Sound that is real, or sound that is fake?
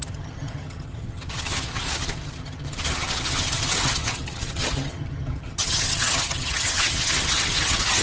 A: fake